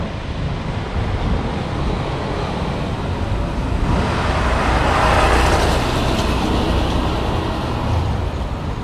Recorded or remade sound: recorded